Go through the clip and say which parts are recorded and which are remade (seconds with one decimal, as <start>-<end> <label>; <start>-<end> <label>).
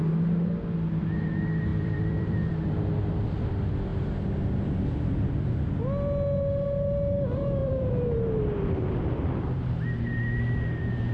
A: 0.0-1.7 recorded; 1.7-2.5 remade; 2.5-3.9 recorded; 3.9-5.3 remade; 5.3-7.6 recorded; 7.6-10.4 remade; 10.4-11.1 recorded